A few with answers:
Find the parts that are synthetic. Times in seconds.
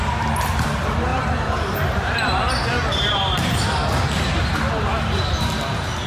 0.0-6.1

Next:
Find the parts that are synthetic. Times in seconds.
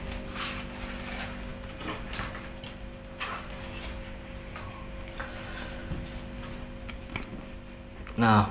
none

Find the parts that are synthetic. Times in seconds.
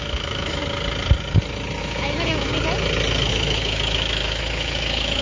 0.0-0.6; 1.8-2.5; 3.3-5.2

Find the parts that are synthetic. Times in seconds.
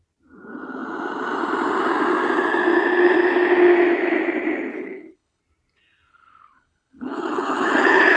4.7-5.4; 6.1-8.2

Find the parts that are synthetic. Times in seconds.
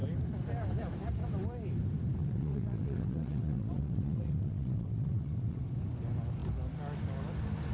2.2-5.6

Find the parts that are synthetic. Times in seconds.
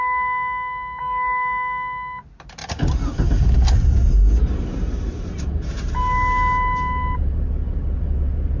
2.6-5.9